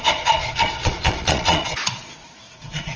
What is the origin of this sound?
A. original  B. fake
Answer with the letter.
B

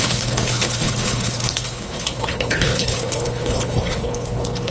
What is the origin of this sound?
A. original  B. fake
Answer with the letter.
B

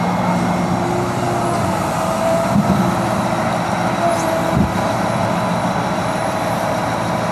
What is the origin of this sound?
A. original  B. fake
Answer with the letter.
B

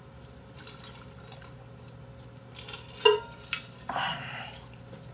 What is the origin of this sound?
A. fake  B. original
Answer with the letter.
B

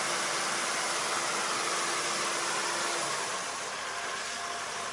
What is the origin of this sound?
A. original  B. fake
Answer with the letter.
A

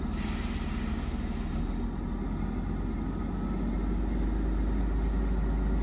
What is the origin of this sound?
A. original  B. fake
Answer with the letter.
A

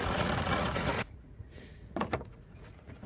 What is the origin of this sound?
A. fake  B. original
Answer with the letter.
A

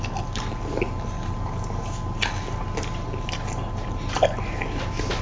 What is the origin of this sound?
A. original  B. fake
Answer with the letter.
A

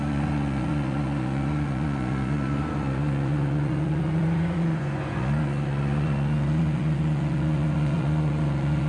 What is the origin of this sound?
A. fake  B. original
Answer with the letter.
A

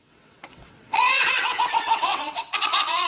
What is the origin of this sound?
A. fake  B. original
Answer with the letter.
A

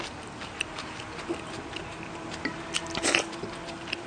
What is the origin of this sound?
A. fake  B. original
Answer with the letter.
B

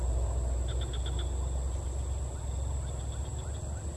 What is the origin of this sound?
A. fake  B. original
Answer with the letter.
B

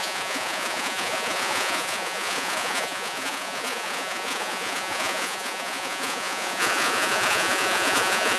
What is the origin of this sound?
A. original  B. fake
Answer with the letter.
B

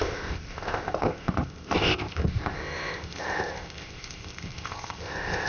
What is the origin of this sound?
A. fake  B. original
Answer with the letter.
A